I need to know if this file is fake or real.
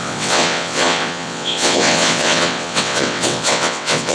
fake